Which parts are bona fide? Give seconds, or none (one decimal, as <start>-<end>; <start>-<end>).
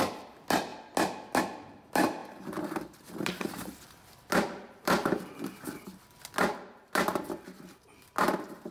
0.7-1.4